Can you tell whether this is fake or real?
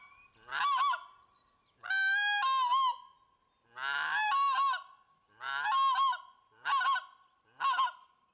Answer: real